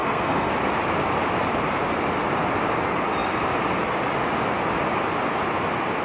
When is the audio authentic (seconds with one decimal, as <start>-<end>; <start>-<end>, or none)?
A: 0.5-6.0